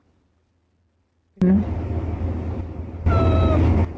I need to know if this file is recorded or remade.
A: recorded